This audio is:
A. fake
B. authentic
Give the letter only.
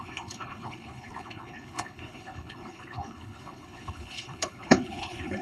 A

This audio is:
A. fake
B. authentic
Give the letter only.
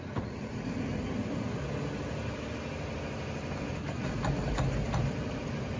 B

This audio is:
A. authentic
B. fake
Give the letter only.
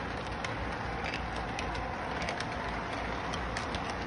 A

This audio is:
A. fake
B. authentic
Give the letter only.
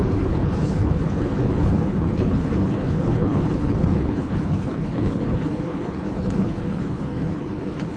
A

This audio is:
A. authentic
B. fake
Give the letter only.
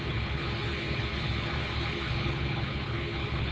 B